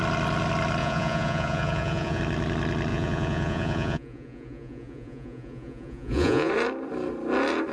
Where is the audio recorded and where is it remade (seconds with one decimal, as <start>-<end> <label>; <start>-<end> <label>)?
0.0-0.8 recorded; 0.8-2.2 remade; 2.2-2.9 recorded; 2.9-6.5 remade; 6.5-7.7 recorded